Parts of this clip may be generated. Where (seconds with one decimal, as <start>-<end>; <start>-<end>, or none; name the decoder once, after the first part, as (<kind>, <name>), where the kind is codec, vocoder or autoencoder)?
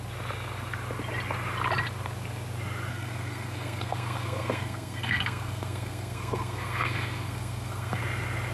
2.9-8.0 (codec, SNAC)